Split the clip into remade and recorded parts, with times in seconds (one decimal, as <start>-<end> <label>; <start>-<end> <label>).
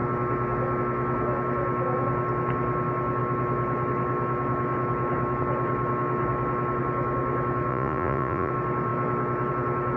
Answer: 0.0-7.7 recorded; 7.7-8.5 remade; 8.5-10.0 recorded